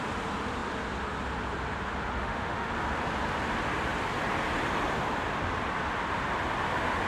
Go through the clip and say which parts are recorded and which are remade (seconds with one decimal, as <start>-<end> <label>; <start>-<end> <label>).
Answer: 0.0-2.2 recorded; 2.2-2.7 remade; 2.7-7.1 recorded